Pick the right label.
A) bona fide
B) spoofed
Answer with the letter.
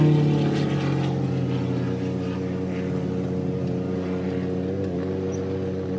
A